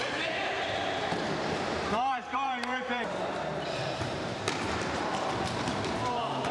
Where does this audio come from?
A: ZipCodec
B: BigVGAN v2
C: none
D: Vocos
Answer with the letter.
B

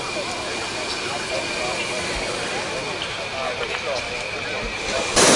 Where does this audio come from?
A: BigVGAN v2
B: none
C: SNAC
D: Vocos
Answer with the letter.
B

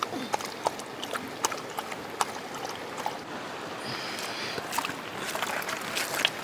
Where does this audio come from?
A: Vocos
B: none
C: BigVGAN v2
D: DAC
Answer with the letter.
B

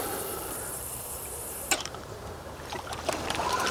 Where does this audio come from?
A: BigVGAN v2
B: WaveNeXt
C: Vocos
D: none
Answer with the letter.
A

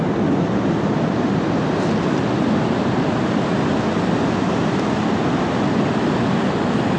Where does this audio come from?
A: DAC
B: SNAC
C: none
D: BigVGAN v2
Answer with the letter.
C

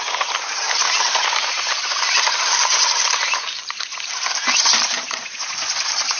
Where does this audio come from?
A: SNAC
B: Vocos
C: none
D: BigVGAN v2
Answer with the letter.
D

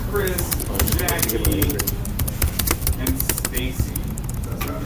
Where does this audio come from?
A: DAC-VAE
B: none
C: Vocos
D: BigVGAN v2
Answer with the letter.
B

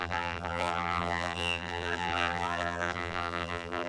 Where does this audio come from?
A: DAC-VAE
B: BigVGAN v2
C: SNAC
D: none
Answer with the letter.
B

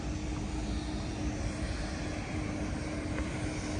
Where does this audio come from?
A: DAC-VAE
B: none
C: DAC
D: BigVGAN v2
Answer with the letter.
B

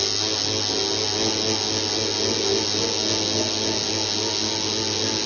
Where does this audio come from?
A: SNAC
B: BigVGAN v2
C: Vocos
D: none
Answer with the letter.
D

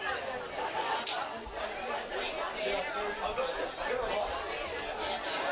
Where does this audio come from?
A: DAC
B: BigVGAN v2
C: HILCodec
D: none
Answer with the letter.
D